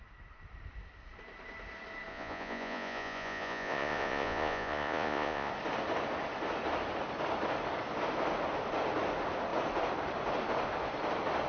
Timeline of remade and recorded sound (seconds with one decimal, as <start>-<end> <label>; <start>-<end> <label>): 0.0-2.1 recorded; 2.1-5.5 remade; 5.5-11.5 recorded